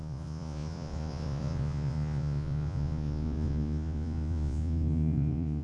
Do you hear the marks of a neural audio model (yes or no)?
yes